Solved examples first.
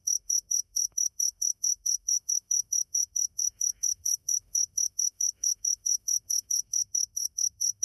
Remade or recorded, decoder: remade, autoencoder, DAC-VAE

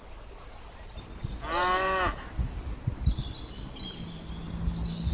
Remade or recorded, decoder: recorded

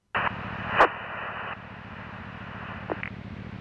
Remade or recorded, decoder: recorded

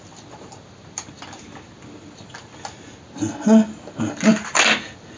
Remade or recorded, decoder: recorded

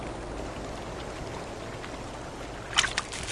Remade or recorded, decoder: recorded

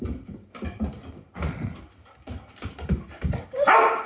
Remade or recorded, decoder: recorded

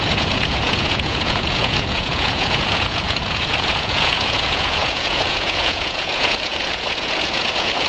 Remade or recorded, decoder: remade, vocoder, Vocos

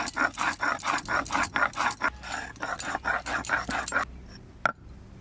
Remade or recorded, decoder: recorded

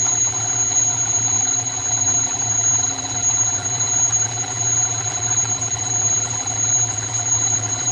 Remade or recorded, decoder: remade, vocoder, BigVGAN v2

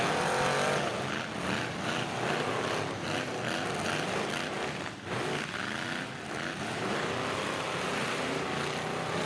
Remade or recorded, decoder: recorded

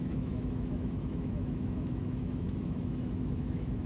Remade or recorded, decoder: remade, autoencoder, DAC-VAE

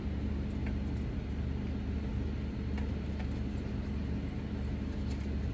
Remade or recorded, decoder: recorded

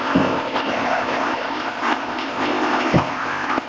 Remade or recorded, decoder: remade, codec, ZipCodec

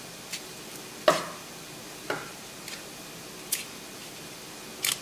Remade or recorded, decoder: recorded